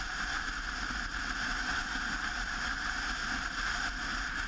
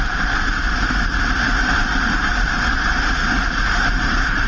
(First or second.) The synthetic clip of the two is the second